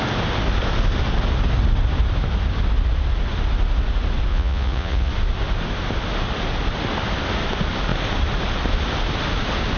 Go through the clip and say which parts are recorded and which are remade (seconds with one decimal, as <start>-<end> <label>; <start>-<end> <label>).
0.0-4.3 recorded; 4.3-5.1 remade; 5.1-9.8 recorded